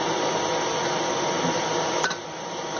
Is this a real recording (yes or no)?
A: yes